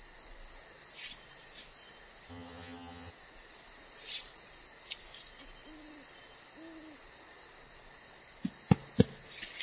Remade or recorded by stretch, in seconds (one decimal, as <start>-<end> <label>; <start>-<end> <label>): 0.0-2.3 recorded; 2.3-3.1 remade; 3.1-9.6 recorded